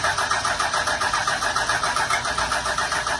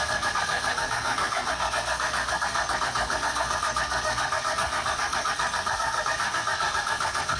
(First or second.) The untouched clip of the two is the first